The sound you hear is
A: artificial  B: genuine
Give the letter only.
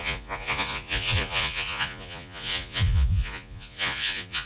A